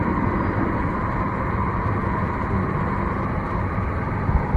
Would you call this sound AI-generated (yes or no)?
no